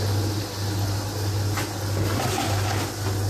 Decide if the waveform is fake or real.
real